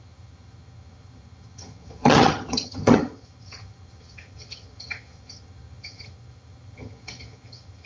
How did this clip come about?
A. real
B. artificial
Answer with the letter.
B